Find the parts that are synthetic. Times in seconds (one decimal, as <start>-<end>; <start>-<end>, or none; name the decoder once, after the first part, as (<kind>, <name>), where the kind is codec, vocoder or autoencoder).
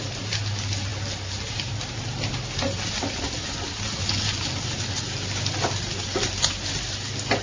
none